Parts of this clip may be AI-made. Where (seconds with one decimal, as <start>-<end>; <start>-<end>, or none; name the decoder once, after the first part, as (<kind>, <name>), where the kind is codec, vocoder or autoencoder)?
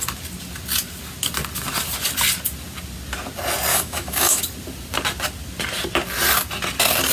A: 3.7-4.4 (autoencoder, DAC-VAE)